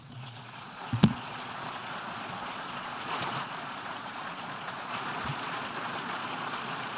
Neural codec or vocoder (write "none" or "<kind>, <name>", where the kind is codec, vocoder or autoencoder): vocoder, Vocos